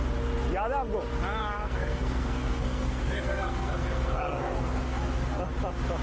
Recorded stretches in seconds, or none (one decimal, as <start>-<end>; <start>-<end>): 0.0-1.4; 5.0-6.0